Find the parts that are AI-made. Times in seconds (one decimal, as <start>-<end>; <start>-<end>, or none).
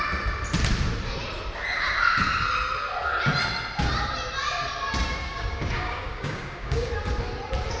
5.2-6.9